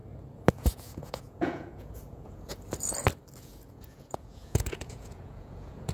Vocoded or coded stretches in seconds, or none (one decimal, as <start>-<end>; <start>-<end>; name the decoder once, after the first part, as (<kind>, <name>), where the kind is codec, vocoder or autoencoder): 0.5-2.5 (vocoder, Vocos); 3.4-5.9